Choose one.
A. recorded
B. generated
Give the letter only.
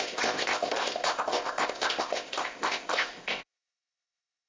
B